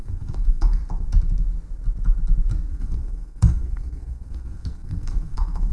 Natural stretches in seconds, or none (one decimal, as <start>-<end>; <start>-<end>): 0.8-2.7